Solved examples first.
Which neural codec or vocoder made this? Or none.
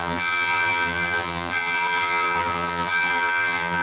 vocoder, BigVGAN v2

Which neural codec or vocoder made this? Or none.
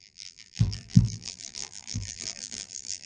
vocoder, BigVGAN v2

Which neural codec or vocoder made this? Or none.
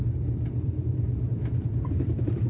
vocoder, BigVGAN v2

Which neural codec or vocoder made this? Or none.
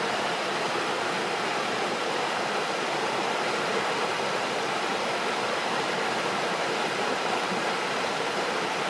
vocoder, BigVGAN v2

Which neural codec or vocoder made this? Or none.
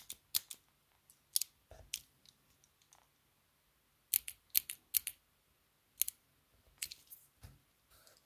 none